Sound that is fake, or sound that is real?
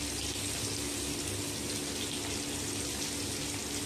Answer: real